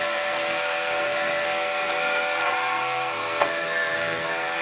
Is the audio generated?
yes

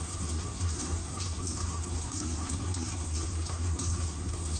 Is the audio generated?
yes